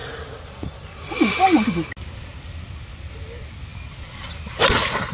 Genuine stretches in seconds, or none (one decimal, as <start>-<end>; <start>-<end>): 0.0-5.1